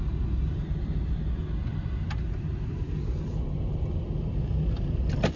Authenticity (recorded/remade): recorded